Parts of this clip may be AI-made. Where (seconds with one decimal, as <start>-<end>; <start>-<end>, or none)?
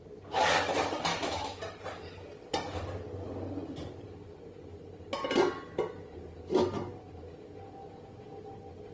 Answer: 1.1-1.6